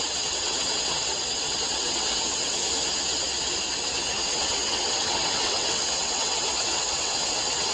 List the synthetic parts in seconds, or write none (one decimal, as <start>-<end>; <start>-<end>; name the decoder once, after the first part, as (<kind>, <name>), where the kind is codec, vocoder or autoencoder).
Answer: 0.0-2.6 (vocoder, WaveNeXt); 4.3-7.7